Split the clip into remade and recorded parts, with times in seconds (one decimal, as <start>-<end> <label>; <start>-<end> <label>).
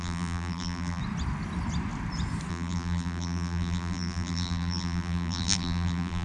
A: 0.0-1.0 remade; 1.0-2.5 recorded; 2.5-6.2 remade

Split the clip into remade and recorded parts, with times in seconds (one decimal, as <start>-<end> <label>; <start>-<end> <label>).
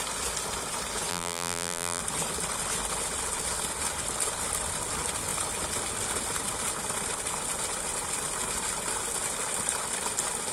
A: 0.0-1.1 recorded; 1.1-2.0 remade; 2.0-10.5 recorded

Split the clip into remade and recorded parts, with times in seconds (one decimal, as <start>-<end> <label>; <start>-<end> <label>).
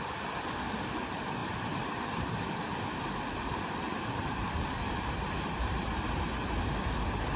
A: 0.0-7.4 remade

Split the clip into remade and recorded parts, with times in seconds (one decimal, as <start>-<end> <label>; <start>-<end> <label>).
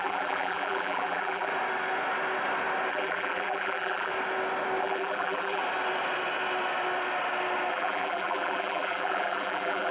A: 0.0-1.5 remade; 1.5-2.9 recorded; 2.9-4.1 remade; 4.1-4.8 recorded; 4.8-5.6 remade; 5.6-7.7 recorded; 7.7-9.9 remade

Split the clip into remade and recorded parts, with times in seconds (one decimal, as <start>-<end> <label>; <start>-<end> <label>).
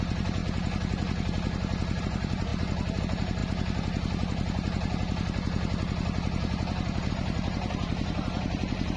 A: 0.0-0.4 remade; 0.4-2.0 recorded; 2.0-2.5 remade; 2.5-3.0 recorded; 3.0-3.4 remade; 3.4-7.1 recorded; 7.1-9.0 remade